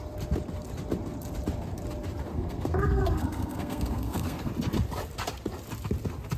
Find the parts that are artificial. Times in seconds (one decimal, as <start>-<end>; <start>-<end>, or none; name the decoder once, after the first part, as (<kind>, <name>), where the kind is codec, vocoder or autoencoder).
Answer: 2.3-4.5 (codec, SNAC)